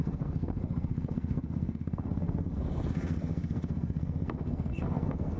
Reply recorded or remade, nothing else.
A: remade